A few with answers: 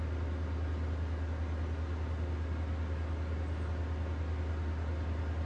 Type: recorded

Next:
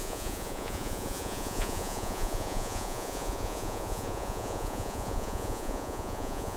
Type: remade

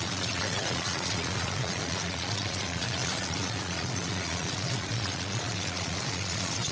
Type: remade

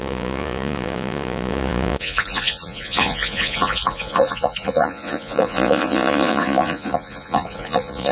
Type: remade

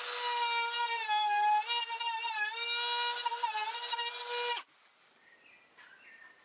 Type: recorded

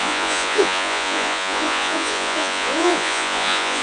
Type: remade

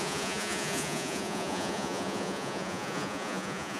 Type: remade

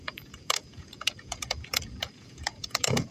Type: remade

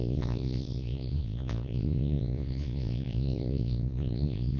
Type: remade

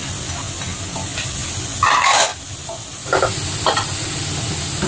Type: recorded